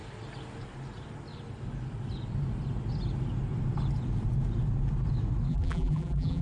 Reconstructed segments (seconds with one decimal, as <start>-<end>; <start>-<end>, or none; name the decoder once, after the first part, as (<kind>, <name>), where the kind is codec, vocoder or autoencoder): 5.5-6.4 (vocoder, BigVGAN v2)